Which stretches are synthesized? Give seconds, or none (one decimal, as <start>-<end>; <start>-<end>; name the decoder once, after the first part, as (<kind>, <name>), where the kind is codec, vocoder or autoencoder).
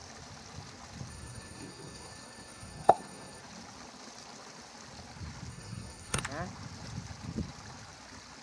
1.1-3.4 (codec, SNAC); 5.5-6.2